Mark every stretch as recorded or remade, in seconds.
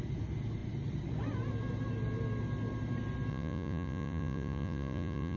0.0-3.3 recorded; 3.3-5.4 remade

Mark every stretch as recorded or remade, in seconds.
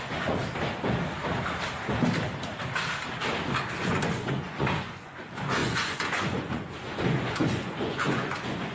0.0-0.4 remade; 0.4-3.8 recorded; 3.8-8.7 remade